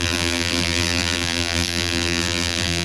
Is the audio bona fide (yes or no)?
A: no